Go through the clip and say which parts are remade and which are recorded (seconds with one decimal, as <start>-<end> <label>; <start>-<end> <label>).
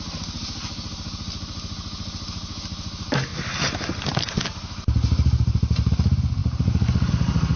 0.0-7.6 recorded